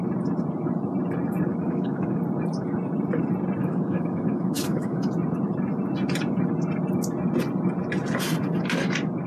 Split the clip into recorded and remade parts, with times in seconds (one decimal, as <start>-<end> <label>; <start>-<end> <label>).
0.0-1.5 recorded; 1.5-2.2 remade; 2.2-3.6 recorded; 3.6-5.1 remade; 5.1-9.3 recorded